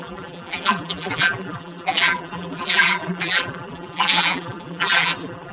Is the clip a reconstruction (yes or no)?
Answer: yes